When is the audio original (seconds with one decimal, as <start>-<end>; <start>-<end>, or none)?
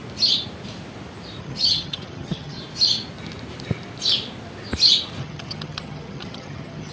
0.0-1.4; 2.6-5.2